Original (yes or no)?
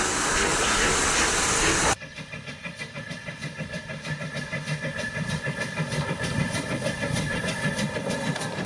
yes